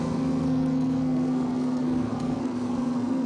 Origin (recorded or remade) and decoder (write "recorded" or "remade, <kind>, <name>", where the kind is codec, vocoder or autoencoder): remade, codec, SNAC